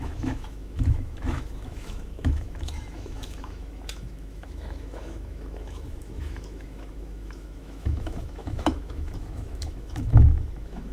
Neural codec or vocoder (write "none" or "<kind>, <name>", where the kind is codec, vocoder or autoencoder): autoencoder, DAC-VAE